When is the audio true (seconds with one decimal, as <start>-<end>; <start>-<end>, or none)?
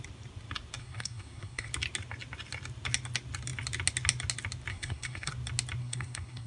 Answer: 0.0-0.8; 1.7-4.7; 5.3-5.8